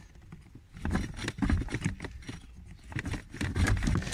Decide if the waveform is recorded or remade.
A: recorded